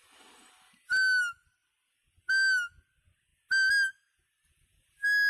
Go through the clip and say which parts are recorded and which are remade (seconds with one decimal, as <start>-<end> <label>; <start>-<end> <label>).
0.0-5.3 recorded